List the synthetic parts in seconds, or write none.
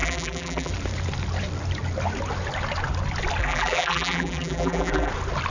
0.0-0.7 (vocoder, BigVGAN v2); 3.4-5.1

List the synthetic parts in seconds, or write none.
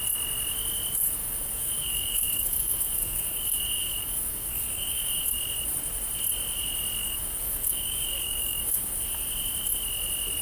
1.2-5.4 (codec, DAC); 7.0-9.0